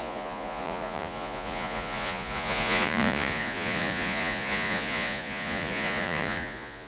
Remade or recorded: remade